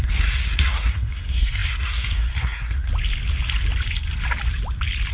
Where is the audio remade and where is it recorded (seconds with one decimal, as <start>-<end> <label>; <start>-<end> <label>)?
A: 0.0-2.9 remade; 2.9-5.1 recorded